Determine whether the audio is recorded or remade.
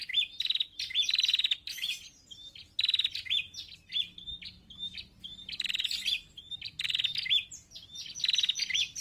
recorded